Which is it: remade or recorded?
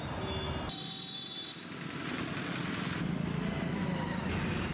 recorded